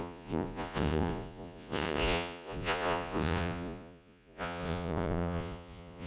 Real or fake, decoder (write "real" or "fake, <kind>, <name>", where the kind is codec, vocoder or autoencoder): fake, vocoder, Vocos